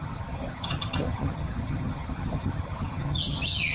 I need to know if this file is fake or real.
fake